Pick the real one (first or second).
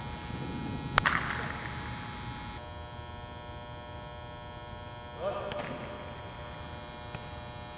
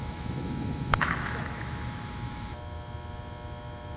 first